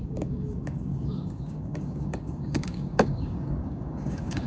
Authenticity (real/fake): fake